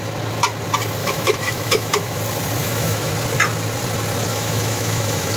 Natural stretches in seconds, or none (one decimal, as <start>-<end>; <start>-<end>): 0.0-1.0; 2.2-2.6; 3.1-4.3